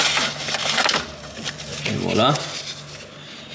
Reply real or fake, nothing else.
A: real